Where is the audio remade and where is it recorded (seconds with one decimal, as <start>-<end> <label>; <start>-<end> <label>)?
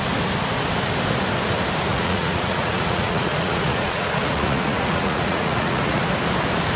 0.0-1.9 recorded; 1.9-6.0 remade; 6.0-6.8 recorded